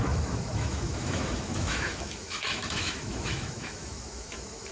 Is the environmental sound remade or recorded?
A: remade